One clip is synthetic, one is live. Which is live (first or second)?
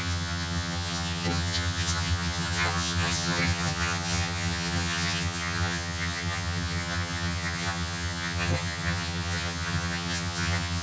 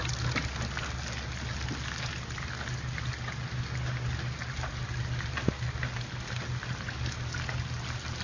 second